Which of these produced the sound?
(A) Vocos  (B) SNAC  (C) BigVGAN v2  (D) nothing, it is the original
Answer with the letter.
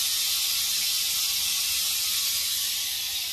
D